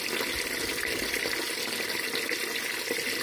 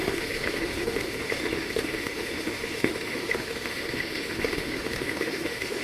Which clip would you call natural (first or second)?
first